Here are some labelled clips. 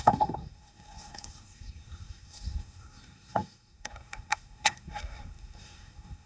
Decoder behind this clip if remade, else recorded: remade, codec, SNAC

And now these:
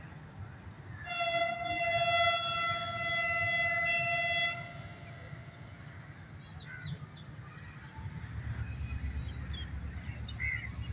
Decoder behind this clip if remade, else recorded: recorded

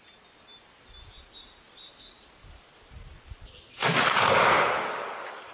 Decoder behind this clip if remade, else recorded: recorded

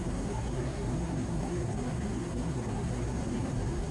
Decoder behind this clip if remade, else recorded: remade, codec, SNAC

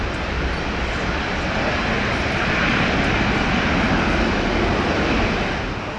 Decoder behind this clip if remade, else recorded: recorded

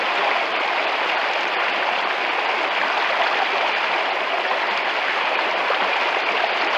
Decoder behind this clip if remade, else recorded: recorded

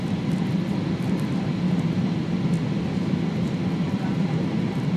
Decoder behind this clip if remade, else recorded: recorded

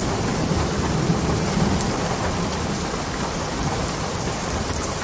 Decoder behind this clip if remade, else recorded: recorded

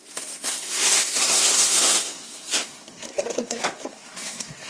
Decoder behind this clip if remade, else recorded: remade, codec, SNAC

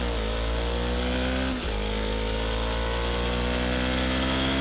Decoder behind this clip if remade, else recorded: recorded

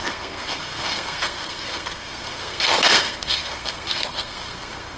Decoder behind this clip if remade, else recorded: remade, codec, SNAC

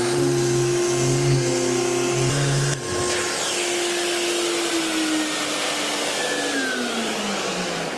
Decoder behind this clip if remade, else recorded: recorded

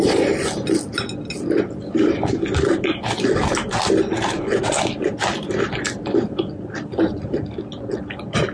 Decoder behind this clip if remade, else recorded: recorded